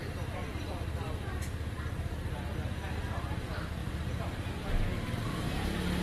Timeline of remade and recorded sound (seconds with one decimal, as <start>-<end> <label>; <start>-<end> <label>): 0.0-6.0 remade